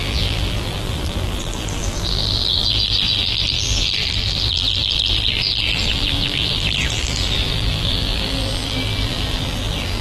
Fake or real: fake